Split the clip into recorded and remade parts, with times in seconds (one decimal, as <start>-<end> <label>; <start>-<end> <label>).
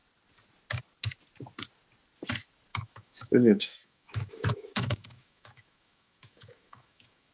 0.0-2.7 recorded; 2.7-7.3 remade